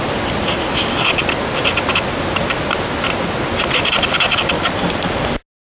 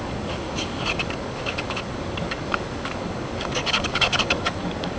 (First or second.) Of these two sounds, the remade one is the second